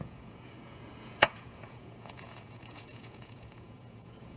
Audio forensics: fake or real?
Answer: fake